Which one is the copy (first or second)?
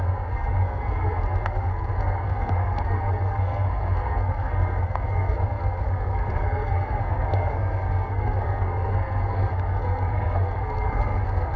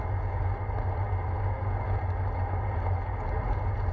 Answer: first